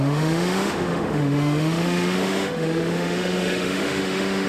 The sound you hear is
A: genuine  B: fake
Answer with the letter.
B